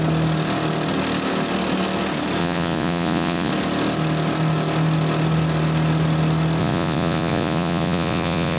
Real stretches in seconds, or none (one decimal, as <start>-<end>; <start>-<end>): 0.0-2.4; 3.5-6.6